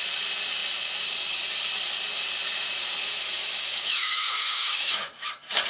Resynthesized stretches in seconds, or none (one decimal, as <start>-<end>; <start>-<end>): 3.0-5.3